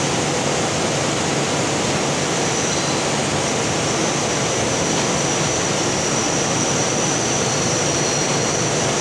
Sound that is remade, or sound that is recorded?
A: recorded